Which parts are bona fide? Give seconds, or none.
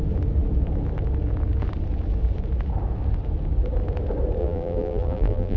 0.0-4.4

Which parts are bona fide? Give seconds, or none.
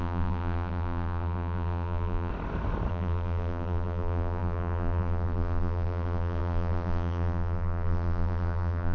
2.3-2.9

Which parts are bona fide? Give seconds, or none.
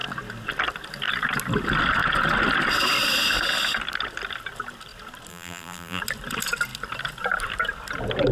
0.0-5.3; 6.0-8.3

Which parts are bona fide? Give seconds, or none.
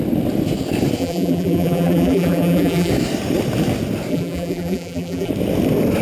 0.0-1.0; 2.9-4.1; 5.3-6.0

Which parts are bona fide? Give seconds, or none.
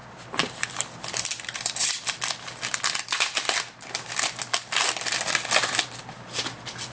0.7-6.9